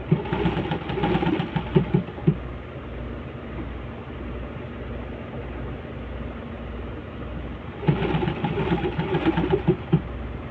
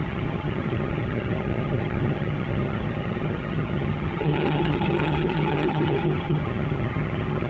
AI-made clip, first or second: second